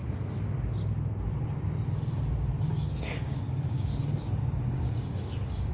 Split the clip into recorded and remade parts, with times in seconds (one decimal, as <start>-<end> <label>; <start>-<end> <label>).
0.0-2.7 recorded; 2.7-5.7 remade